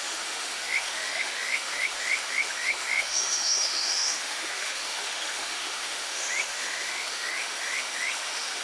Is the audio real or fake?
fake